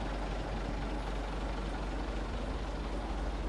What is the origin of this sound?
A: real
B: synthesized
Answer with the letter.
A